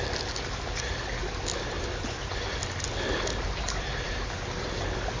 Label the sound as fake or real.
real